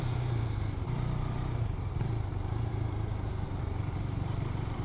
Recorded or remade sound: remade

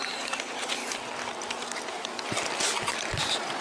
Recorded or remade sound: recorded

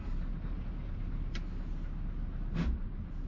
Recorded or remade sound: recorded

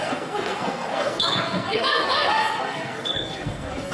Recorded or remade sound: remade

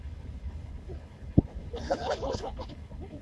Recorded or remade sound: remade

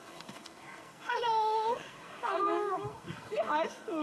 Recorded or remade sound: remade